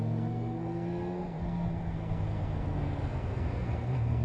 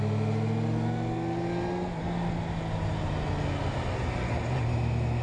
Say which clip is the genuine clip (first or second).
second